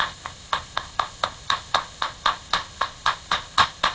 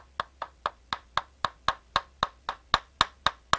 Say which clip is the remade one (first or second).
first